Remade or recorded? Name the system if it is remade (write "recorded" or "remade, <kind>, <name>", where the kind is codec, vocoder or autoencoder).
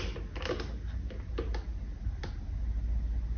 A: recorded